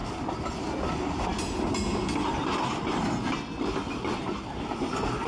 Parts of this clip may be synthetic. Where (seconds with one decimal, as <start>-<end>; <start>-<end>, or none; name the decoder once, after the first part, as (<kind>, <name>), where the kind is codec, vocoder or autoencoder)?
none